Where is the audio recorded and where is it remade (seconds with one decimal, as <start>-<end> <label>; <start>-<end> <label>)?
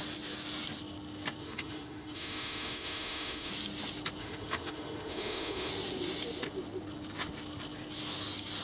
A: 0.0-1.4 recorded; 1.4-3.5 remade; 3.5-4.2 recorded; 4.2-5.7 remade; 5.7-8.6 recorded